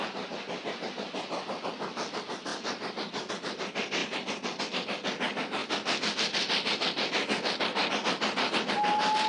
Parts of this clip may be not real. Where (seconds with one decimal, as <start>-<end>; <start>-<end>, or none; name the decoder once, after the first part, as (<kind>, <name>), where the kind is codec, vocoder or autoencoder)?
2.5-3.3 (vocoder, BigVGAN v2); 4.0-4.6